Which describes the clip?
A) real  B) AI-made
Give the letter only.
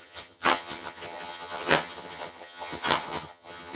B